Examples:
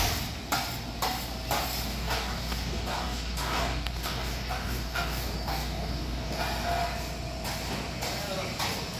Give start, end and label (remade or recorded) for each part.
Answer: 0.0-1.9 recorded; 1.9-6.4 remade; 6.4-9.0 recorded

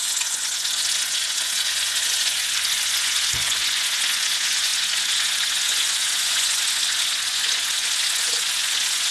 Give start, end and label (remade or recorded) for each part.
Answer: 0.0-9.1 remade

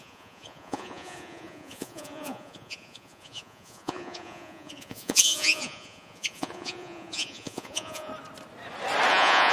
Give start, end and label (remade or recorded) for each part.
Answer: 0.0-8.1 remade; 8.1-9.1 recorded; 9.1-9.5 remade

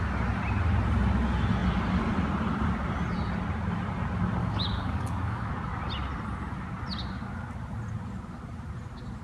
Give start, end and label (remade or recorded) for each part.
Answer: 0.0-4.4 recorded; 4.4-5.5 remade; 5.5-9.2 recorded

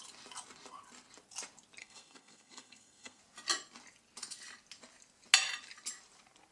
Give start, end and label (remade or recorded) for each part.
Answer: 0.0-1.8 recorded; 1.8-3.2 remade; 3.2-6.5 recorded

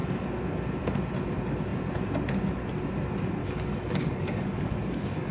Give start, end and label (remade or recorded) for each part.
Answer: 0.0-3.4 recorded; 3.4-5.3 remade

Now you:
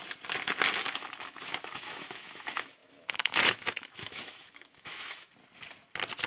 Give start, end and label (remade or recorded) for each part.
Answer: 0.0-0.8 recorded; 0.8-5.3 remade; 5.3-6.3 recorded

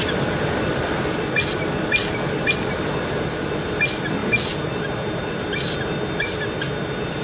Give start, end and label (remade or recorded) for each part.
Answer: 0.0-7.2 recorded